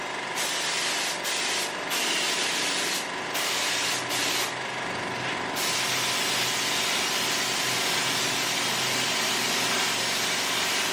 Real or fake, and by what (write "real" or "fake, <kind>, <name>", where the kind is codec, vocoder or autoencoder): real